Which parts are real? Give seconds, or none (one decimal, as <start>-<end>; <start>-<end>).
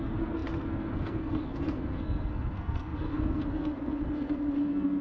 none